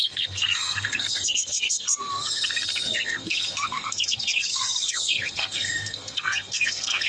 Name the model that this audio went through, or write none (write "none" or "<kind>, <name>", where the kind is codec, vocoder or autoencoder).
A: codec, SNAC